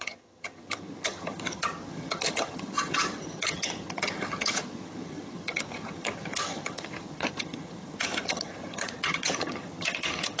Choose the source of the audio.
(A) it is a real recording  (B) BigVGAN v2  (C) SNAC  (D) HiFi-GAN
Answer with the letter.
D